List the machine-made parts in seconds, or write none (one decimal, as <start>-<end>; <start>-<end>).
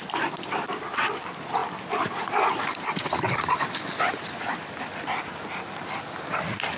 none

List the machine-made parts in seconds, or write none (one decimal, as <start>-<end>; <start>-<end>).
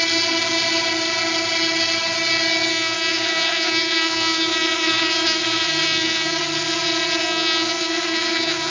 2.7-6.4; 7.2-8.7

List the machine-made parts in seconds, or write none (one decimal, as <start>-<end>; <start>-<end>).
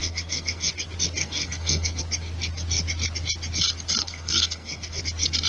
0.0-0.7; 1.2-2.0; 4.0-5.0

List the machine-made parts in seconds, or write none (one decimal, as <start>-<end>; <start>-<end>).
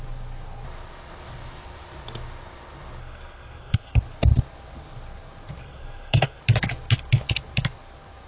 3.0-4.0; 5.6-6.4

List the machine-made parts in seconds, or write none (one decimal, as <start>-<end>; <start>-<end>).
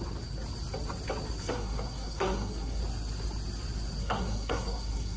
1.4-2.8; 4.0-5.2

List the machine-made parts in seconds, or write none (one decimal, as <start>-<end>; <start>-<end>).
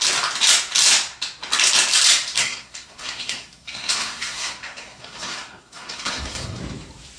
2.4-6.6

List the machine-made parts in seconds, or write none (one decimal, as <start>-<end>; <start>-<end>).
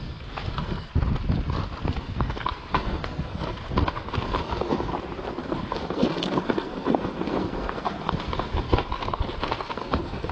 0.0-0.9; 1.8-4.9; 5.4-10.3